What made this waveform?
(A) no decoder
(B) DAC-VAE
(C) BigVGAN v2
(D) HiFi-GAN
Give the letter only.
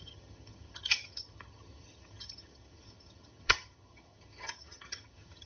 D